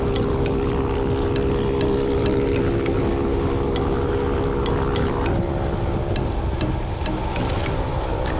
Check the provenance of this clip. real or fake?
real